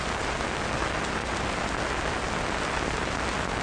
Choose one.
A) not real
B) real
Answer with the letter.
B